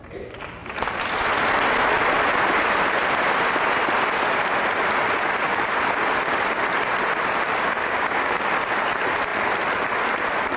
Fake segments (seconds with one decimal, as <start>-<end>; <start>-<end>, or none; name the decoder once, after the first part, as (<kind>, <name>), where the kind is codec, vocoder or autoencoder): 7.8-8.5 (codec, DAC)